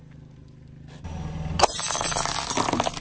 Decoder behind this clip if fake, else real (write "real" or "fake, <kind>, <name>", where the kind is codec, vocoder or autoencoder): real